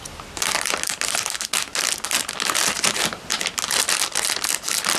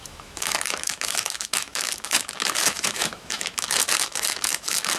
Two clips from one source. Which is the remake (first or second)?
second